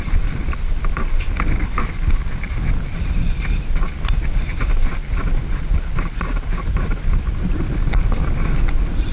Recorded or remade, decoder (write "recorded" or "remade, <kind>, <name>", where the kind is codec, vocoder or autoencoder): recorded